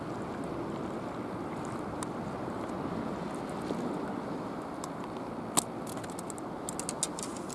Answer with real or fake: real